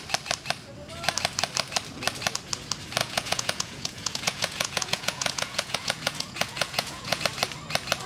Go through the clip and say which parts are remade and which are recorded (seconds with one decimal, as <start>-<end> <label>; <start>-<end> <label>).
0.0-3.0 recorded; 3.0-7.2 remade; 7.2-8.1 recorded